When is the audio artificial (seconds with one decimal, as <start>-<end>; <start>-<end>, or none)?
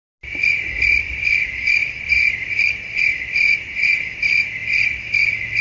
0.9-4.6